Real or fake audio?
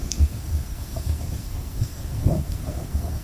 fake